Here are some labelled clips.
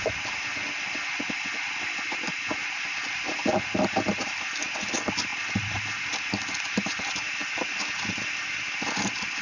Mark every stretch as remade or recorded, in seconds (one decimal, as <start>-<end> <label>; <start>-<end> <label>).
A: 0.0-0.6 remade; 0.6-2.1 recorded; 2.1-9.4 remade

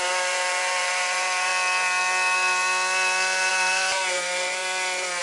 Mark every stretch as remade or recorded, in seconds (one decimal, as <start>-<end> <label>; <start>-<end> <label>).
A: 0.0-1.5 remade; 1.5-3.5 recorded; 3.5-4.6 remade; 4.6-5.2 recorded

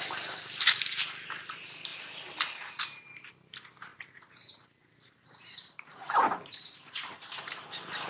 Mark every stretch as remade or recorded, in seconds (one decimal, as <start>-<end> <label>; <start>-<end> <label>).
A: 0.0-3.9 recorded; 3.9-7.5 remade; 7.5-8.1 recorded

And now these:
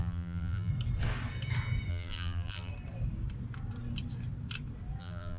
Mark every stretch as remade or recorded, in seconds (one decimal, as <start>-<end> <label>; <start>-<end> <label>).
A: 0.0-0.7 remade; 0.7-1.9 recorded; 1.9-2.7 remade; 2.7-5.0 recorded; 5.0-5.4 remade

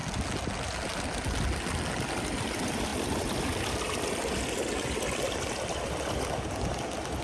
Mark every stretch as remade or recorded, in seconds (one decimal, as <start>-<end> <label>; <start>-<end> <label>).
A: 0.0-7.2 recorded

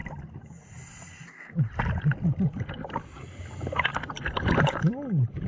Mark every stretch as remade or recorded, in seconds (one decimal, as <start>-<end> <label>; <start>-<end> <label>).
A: 0.0-2.4 remade; 2.4-3.9 recorded; 3.9-4.9 remade; 4.9-5.5 recorded

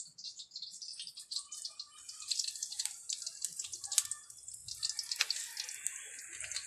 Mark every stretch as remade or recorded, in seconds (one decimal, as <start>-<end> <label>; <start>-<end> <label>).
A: 0.0-0.9 recorded; 0.9-3.0 remade; 3.0-6.7 recorded